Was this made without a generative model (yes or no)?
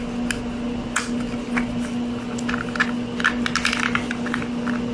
yes